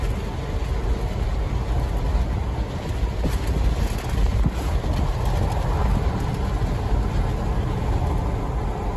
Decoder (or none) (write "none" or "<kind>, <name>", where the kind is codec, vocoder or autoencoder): none